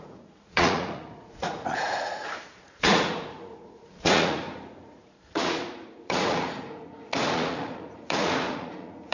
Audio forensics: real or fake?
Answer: fake